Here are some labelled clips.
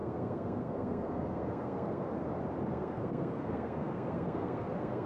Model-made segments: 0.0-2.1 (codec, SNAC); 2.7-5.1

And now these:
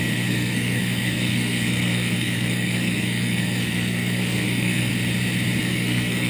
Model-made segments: 0.0-4.9 (codec, SNAC); 5.6-6.3

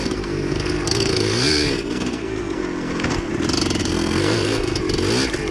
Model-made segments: 0.0-3.3 (codec, SNAC); 3.8-4.8

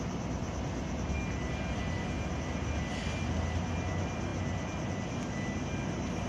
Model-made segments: none

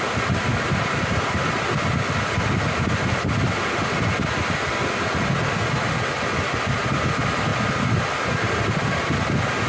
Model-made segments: none